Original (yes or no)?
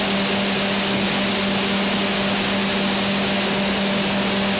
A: yes